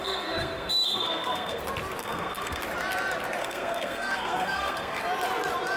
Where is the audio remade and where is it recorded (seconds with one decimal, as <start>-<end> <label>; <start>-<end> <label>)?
0.0-1.6 remade; 1.6-2.0 recorded; 2.0-2.6 remade; 2.6-3.4 recorded; 3.4-5.0 remade; 5.0-5.8 recorded